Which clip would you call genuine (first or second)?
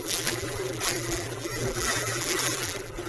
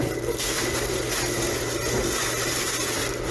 second